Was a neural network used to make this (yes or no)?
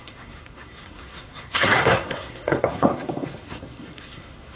yes